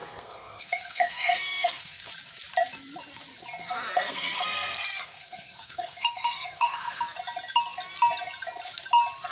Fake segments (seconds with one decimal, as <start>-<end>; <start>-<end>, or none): 0.0-2.1; 3.6-7.0